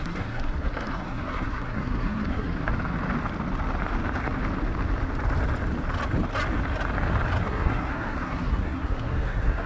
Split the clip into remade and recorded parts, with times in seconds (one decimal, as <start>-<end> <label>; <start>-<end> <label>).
0.0-2.7 remade; 2.7-7.4 recorded; 7.4-9.7 remade